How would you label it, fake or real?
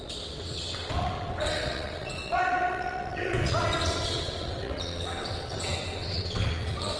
fake